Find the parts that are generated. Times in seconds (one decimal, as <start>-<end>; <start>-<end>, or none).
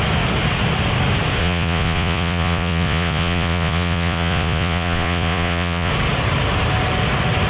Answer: 1.4-5.9